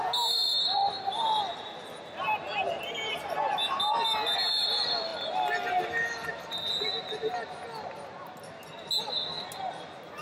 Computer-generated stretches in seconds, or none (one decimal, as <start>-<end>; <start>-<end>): none